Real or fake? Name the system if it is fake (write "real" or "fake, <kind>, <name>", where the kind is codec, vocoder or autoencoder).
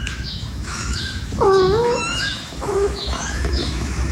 fake, autoencoder, DAC-VAE